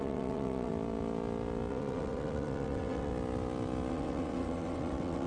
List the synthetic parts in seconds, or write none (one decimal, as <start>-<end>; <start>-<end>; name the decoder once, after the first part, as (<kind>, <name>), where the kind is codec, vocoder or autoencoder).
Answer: 0.0-0.7 (vocoder, WaveNeXt); 1.7-3.1; 3.9-5.3